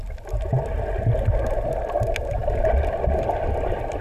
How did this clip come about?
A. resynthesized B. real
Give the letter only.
B